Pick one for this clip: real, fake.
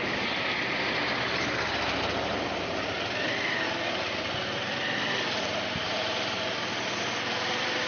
real